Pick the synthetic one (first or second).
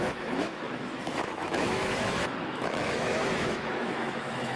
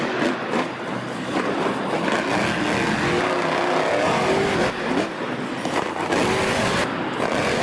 first